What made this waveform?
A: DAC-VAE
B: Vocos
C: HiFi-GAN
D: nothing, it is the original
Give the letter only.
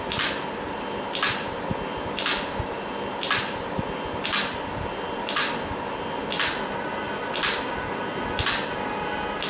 D